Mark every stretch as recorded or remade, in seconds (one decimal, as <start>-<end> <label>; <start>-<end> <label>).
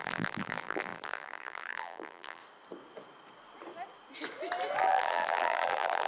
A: 0.0-2.4 remade; 2.4-4.8 recorded; 4.8-6.1 remade